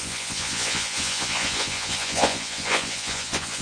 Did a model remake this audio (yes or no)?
yes